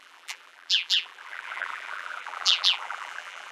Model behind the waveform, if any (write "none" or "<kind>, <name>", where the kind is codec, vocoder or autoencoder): vocoder, BigVGAN v2